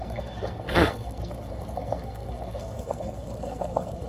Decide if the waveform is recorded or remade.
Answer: remade